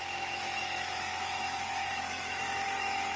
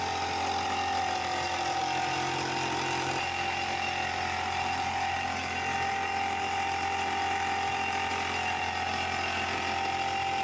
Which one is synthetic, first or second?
first